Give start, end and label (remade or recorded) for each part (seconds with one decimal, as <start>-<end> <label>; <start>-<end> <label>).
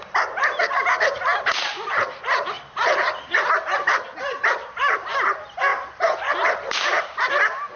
0.0-7.8 recorded